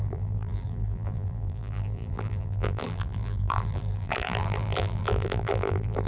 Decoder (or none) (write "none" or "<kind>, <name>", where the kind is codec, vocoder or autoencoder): vocoder, BigVGAN v2